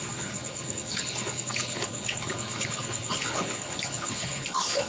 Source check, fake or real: fake